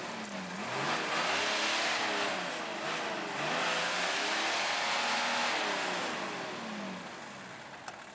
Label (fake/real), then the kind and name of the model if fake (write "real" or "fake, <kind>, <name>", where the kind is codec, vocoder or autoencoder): real